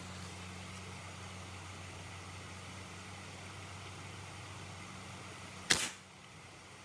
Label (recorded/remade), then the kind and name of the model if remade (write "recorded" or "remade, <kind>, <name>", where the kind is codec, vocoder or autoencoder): recorded